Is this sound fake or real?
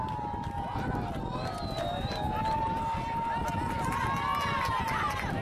real